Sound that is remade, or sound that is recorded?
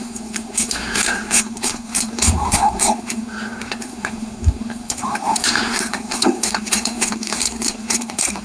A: remade